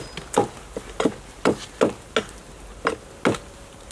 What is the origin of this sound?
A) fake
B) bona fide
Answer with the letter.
B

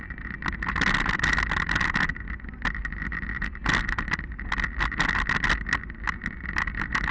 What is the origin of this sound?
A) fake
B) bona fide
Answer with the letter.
B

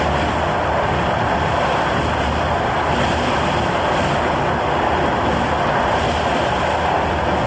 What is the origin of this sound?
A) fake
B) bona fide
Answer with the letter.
B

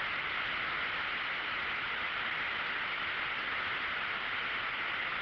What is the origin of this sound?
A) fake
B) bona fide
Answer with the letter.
B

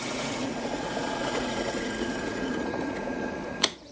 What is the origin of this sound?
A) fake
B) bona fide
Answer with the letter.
A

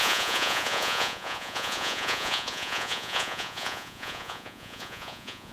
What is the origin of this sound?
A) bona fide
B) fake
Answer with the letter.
B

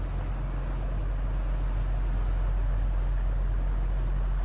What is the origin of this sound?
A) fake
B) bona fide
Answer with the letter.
B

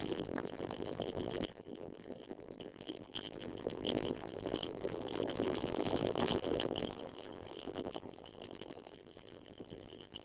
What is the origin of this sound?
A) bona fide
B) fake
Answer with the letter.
B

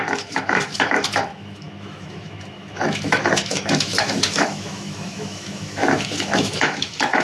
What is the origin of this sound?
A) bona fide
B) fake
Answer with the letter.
B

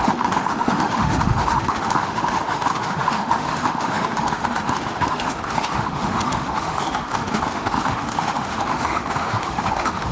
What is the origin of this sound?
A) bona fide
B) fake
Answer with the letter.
B